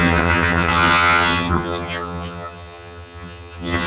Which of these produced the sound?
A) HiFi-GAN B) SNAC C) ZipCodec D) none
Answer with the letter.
A